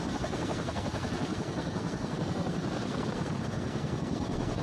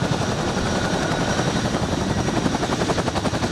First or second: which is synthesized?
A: first